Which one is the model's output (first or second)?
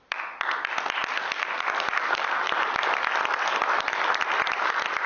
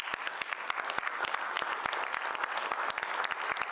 first